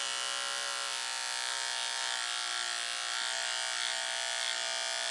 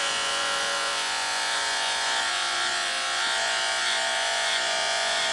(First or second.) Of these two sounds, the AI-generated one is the second